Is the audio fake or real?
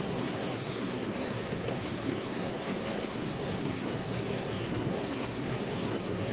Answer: fake